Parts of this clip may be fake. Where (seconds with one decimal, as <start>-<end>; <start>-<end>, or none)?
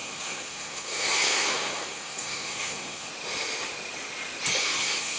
0.0-3.1; 4.6-5.2